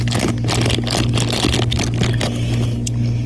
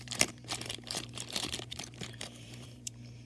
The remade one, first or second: second